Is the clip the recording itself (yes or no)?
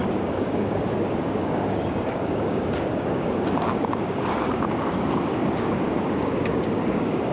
no